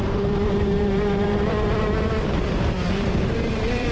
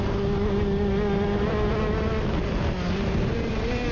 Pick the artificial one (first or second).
first